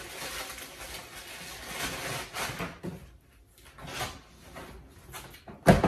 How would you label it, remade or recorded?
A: recorded